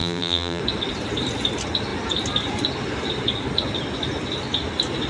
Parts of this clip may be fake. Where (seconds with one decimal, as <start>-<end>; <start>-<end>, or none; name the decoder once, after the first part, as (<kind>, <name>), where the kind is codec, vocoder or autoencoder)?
0.0-0.6 (vocoder, BigVGAN v2)